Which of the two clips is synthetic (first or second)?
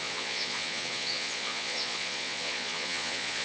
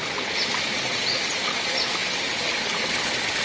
first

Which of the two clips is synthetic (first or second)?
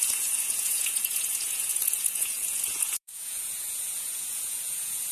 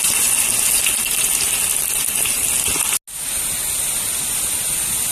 first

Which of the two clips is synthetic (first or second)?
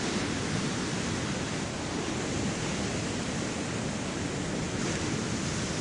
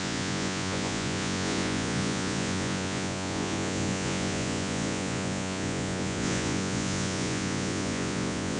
second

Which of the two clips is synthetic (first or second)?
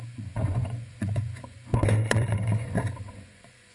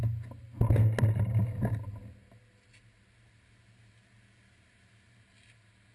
first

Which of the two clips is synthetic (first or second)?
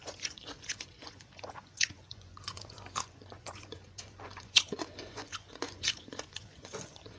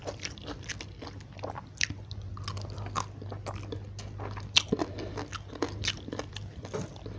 first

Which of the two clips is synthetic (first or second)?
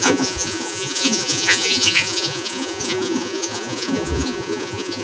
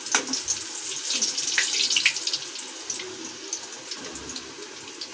first